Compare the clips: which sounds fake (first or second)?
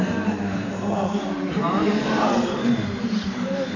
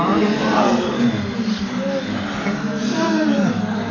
first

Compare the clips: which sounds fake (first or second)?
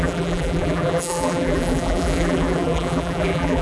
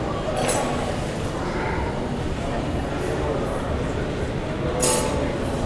first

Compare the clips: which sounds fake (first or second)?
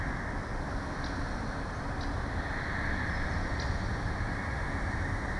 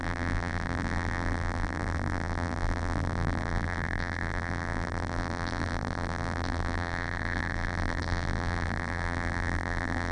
second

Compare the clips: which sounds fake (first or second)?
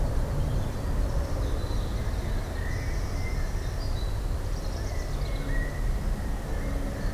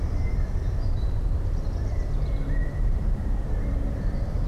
second